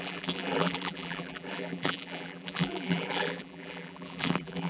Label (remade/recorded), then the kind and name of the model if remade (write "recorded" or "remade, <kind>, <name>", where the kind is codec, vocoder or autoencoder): remade, vocoder, BigVGAN v2